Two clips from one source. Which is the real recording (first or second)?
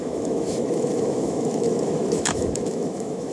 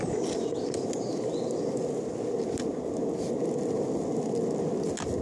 second